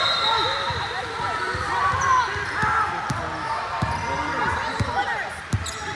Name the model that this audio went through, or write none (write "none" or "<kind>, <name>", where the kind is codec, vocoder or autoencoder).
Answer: none